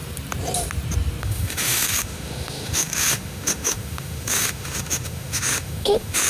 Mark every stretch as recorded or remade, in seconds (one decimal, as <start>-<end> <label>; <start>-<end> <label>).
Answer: 0.0-1.2 recorded; 1.2-6.3 remade